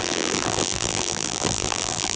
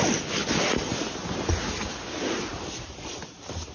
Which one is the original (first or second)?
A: second